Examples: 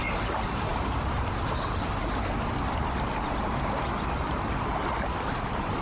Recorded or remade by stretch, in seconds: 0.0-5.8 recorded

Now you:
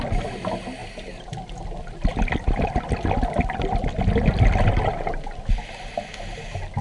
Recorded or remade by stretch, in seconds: 0.0-6.8 recorded